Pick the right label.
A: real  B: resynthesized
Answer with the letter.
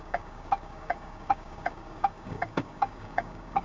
B